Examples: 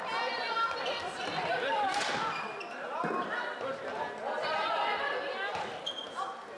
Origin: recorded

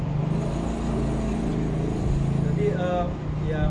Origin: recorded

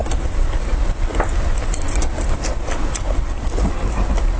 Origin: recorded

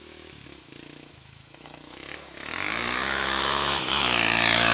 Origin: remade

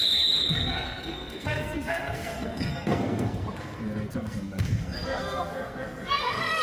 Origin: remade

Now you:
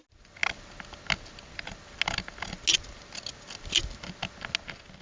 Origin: recorded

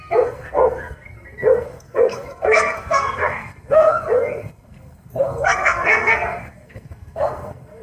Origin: remade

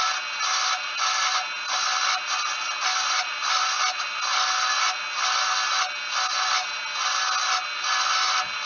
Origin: recorded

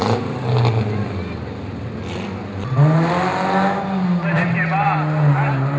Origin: recorded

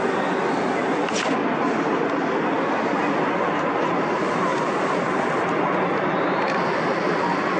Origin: recorded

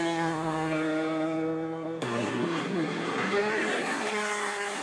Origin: remade